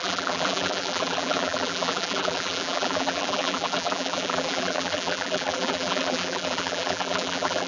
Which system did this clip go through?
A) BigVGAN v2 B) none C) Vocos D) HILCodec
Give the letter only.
A